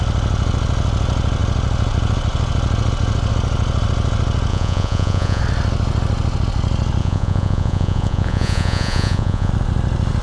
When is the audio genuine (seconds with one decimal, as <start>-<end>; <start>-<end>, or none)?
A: 0.0-4.5; 5.4-7.0; 9.5-10.2